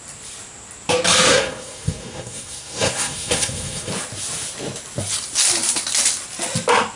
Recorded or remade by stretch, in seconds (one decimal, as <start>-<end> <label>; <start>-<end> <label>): 0.0-1.3 recorded; 1.3-3.9 remade; 3.9-7.0 recorded